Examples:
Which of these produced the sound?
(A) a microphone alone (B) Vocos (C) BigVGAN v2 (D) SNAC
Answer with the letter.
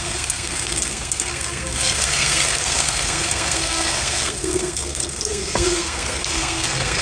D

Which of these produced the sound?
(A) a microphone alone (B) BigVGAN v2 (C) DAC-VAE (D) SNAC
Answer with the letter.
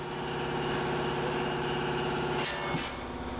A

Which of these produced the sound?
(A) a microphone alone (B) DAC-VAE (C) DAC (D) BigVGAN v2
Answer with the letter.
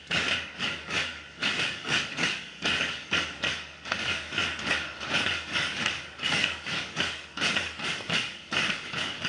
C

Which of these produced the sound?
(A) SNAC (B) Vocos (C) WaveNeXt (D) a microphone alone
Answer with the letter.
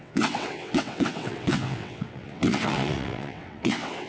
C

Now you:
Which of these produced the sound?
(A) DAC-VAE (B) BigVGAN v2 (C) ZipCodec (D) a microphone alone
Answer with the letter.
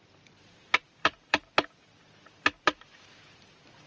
B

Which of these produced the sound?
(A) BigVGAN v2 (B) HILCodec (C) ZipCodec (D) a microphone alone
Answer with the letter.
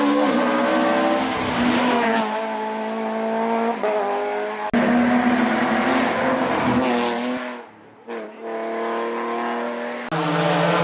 D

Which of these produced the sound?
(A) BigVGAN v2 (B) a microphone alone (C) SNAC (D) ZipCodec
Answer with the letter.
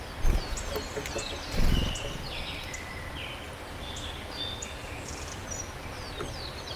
B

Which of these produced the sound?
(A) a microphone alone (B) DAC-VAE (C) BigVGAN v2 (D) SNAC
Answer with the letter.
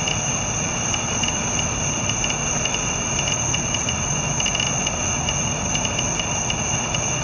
A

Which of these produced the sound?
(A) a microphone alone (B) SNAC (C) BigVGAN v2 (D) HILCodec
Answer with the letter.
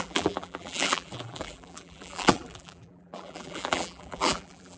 C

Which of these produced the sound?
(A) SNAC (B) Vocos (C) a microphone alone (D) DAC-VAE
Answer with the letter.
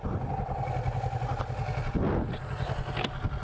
C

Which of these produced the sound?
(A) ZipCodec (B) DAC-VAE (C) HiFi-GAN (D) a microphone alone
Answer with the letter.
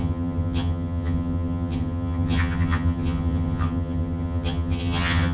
C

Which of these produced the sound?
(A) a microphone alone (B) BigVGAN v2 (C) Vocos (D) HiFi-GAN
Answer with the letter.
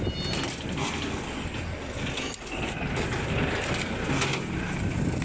A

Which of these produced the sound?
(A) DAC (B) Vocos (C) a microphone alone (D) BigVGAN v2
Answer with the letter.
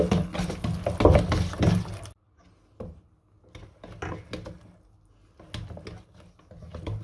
C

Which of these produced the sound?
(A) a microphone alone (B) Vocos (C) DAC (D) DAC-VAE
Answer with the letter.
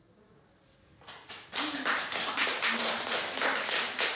A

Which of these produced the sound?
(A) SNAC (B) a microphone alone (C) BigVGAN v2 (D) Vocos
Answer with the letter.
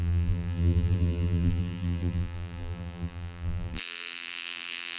C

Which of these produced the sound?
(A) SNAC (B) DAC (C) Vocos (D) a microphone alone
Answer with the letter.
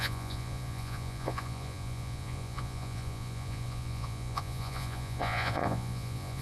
C